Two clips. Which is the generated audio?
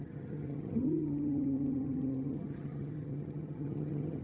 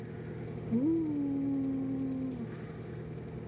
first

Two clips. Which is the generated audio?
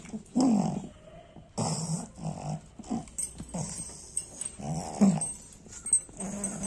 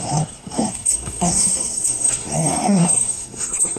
second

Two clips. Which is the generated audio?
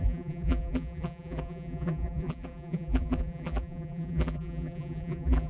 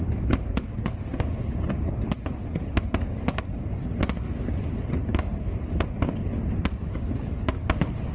first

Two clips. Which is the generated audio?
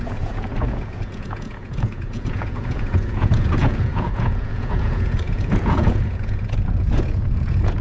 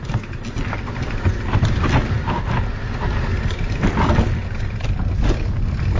first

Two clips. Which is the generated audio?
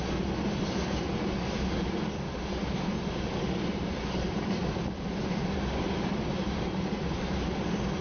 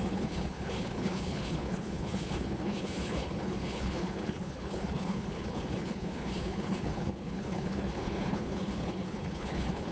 second